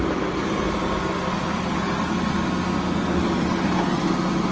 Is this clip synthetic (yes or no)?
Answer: no